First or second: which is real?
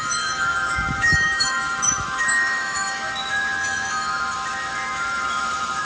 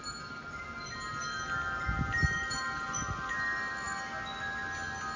second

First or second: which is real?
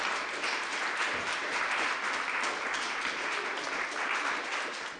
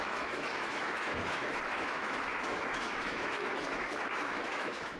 first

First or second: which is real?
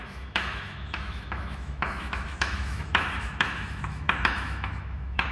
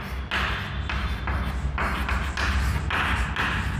second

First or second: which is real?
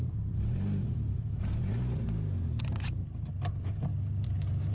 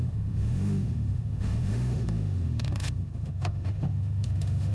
first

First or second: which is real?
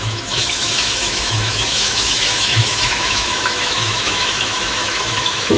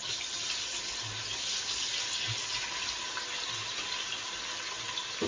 second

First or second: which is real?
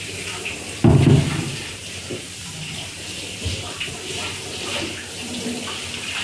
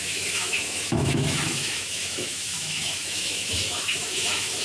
first